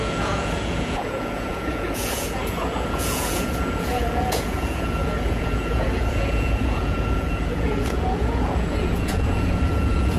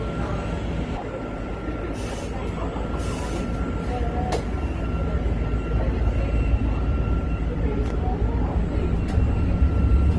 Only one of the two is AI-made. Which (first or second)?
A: first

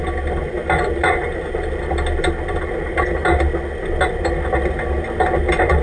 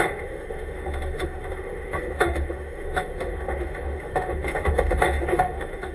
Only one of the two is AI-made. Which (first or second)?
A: second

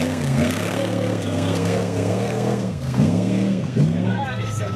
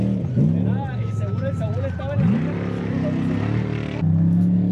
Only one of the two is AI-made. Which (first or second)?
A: first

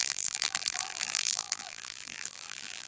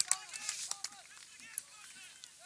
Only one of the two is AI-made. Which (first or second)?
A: first